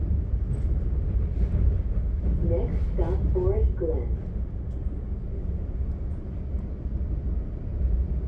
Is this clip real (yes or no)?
yes